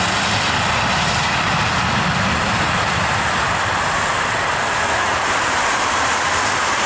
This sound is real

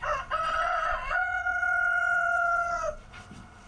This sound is fake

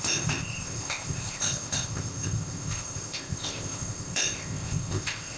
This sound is fake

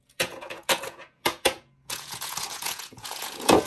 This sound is fake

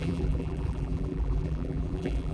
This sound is fake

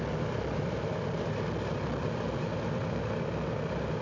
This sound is real